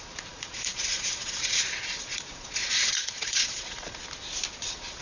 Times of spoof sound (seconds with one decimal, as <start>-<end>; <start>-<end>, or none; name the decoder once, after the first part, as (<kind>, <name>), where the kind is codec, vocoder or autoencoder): 0.0-4.0 (vocoder, Vocos); 4.6-5.0